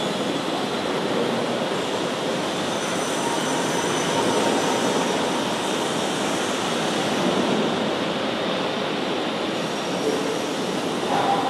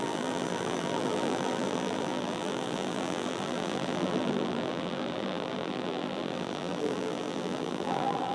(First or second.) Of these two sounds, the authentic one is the first